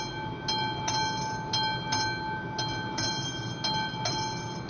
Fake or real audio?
real